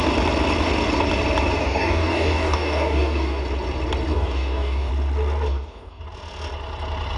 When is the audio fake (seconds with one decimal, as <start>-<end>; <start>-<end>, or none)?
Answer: 1.6-3.4; 4.1-4.9; 5.5-6.0